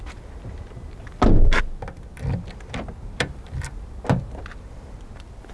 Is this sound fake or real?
real